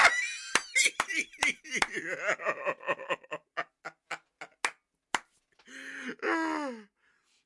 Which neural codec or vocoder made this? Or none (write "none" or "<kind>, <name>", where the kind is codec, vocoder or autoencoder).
none